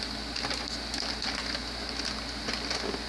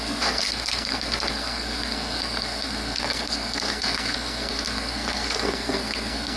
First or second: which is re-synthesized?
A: second